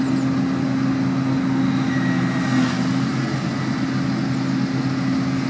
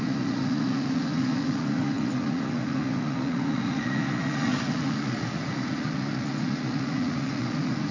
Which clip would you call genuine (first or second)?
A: first